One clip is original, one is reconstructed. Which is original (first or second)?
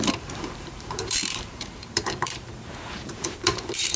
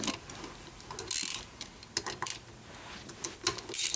second